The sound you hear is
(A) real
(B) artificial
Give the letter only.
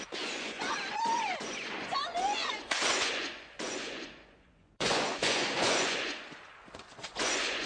B